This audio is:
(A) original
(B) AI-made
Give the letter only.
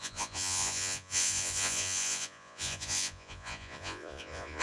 B